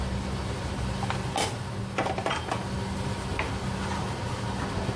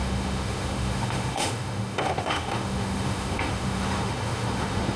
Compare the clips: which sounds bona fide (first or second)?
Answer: first